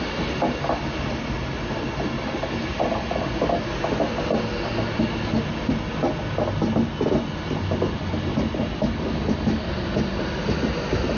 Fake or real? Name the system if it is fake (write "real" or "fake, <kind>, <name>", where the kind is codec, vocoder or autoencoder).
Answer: real